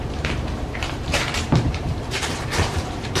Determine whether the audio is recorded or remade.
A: remade